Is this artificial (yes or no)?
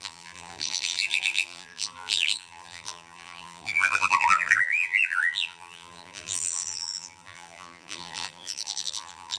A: yes